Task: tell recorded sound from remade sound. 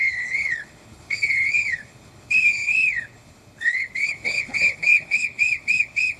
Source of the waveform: remade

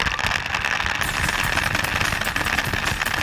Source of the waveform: recorded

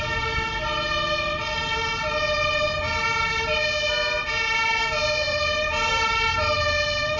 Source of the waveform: recorded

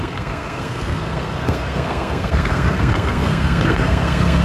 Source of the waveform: remade